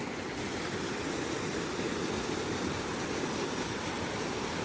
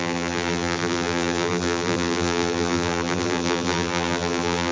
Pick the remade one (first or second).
second